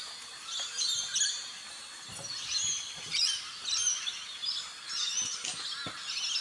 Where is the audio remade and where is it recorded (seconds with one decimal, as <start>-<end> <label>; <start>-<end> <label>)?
0.0-6.4 recorded